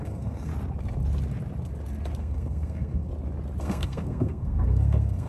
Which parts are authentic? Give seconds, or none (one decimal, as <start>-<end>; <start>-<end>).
0.5-2.2; 3.1-3.6